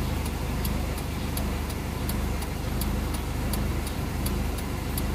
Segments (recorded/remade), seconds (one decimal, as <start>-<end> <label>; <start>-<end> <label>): 0.0-3.7 recorded; 3.7-4.3 remade; 4.3-5.1 recorded